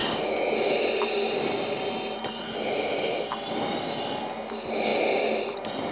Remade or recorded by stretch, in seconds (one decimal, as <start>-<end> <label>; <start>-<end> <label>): 0.0-5.9 recorded